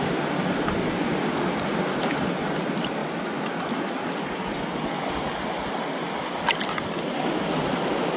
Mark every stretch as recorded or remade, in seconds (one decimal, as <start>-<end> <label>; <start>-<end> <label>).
0.0-8.2 recorded